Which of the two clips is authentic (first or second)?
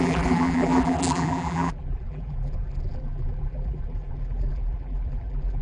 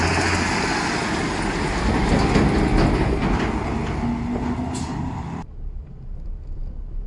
second